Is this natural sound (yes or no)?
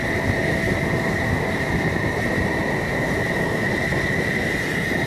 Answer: yes